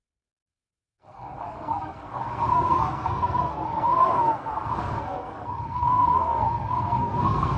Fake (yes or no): yes